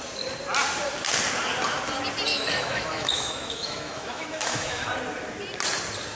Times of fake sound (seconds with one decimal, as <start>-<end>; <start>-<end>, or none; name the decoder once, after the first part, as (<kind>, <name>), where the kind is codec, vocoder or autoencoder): 2.3-4.9 (autoencoder, DAC-VAE)